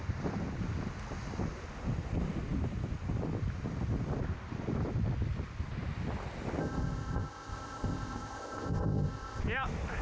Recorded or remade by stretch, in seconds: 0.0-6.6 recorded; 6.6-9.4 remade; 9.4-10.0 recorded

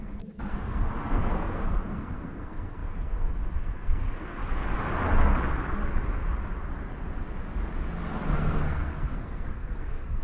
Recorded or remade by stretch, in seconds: 0.0-4.4 remade; 4.4-8.3 recorded; 8.3-10.2 remade

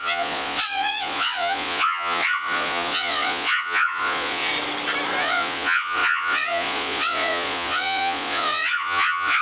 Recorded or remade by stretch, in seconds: 0.0-4.5 remade; 4.5-5.2 recorded; 5.2-9.4 remade

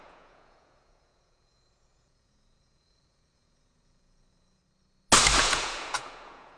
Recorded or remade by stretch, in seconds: 0.0-4.6 remade; 4.6-5.4 recorded; 5.4-6.6 remade

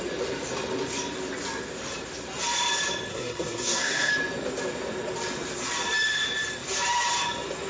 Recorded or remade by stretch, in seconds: 0.0-3.1 recorded; 3.1-4.1 remade; 4.1-7.7 recorded